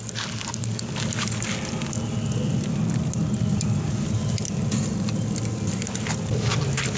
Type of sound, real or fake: real